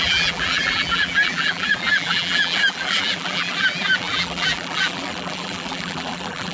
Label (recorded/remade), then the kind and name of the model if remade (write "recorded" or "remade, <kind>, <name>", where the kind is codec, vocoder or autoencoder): remade, vocoder, BigVGAN v2